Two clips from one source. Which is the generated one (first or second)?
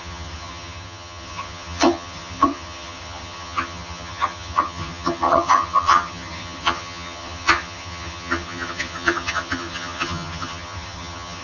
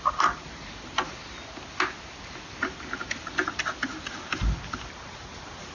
first